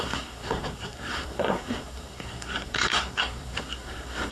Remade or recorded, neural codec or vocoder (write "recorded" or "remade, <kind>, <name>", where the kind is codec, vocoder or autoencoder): remade, codec, SNAC